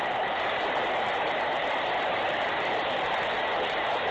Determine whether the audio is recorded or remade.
recorded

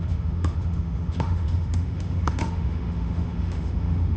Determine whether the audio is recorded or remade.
remade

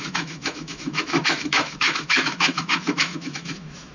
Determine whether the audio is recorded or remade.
remade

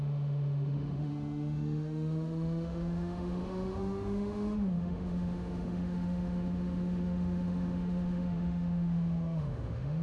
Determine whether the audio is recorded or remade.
remade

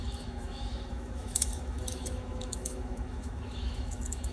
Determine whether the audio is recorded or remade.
remade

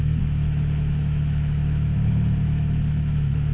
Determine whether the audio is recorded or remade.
remade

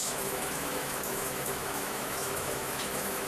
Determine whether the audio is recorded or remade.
remade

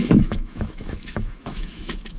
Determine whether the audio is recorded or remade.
remade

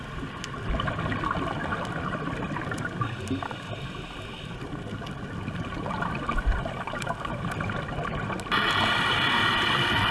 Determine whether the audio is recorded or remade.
recorded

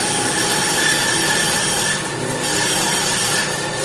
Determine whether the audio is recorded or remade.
recorded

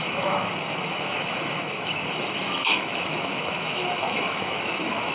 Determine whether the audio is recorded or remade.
remade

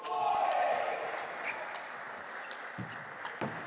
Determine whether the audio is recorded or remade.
recorded